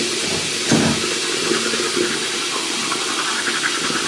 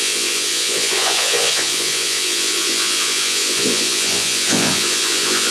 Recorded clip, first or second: first